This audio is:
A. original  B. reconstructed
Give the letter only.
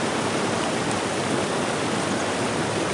A